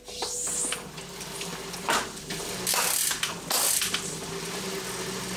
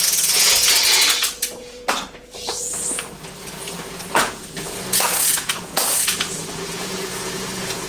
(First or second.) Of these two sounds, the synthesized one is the second